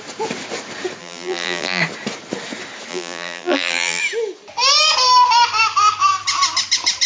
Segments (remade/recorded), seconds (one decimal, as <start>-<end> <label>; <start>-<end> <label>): 0.0-1.0 recorded; 1.0-1.8 remade; 1.8-2.9 recorded; 2.9-4.0 remade; 4.0-7.1 recorded